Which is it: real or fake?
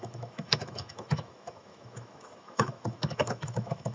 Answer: fake